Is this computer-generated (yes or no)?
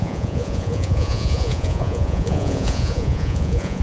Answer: yes